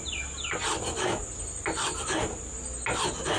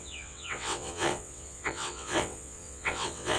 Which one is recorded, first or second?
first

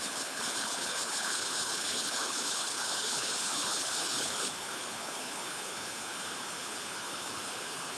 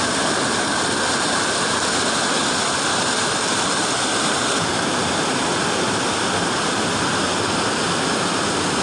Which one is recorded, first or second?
second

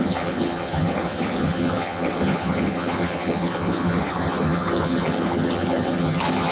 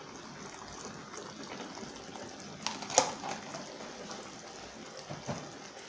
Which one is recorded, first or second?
second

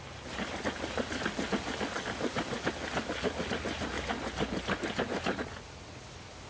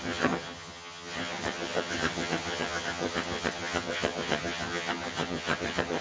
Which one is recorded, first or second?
first